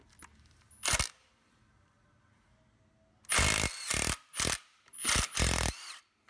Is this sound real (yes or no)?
yes